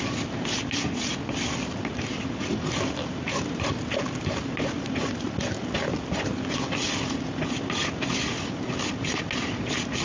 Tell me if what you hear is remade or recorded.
recorded